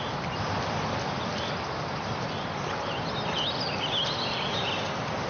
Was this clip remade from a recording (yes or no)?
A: no